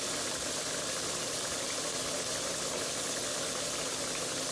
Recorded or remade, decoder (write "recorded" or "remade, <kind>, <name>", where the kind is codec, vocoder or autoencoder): recorded